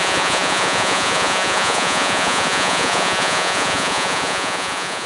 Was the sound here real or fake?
fake